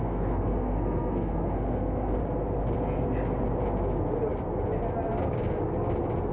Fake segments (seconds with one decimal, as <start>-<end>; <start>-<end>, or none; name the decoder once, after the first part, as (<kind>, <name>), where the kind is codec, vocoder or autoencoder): 0.0-2.2 (codec, SNAC)